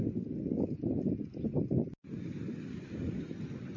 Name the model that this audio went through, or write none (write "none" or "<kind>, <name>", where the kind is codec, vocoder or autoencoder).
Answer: none